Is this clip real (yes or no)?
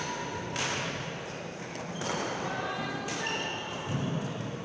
yes